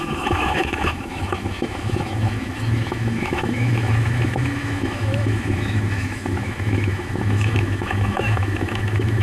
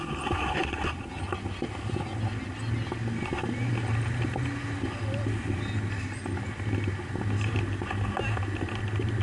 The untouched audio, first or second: second